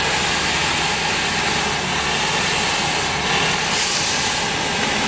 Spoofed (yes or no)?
no